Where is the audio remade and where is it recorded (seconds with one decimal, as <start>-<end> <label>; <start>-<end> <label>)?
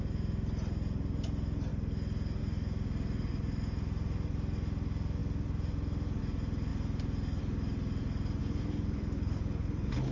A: 0.0-8.4 recorded; 8.4-10.1 remade